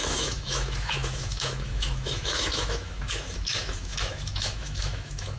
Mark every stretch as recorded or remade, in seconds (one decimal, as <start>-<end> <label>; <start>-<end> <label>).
0.0-5.4 remade